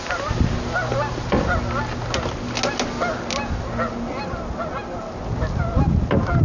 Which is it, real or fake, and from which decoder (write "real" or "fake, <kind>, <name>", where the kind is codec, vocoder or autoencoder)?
real